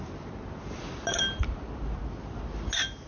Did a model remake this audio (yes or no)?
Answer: no